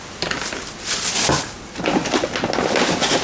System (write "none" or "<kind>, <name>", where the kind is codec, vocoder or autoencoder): none